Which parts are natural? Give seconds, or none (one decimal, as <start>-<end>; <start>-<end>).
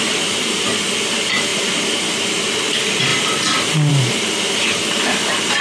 0.0-5.6